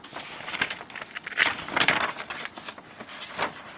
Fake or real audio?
fake